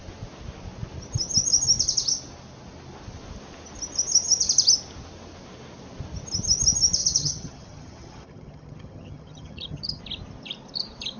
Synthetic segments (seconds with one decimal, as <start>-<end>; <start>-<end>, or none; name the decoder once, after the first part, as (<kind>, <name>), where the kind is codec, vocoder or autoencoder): 7.0-10.0 (vocoder, HiFi-GAN)

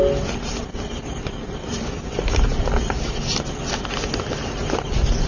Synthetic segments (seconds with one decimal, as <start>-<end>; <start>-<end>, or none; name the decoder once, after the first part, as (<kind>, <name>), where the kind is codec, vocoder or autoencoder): none